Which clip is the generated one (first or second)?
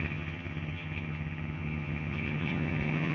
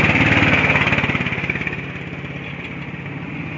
first